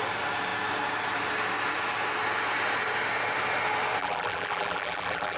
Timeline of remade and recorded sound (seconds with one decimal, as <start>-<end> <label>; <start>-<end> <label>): 0.0-4.0 recorded; 4.0-5.4 remade